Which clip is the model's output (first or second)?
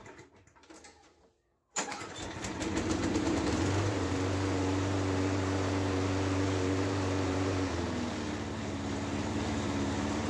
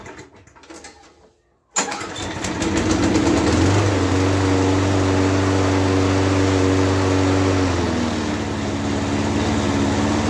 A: first